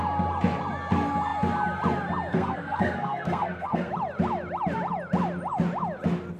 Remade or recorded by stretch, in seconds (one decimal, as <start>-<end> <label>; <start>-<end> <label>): 0.0-2.3 recorded; 2.3-3.9 remade; 3.9-6.4 recorded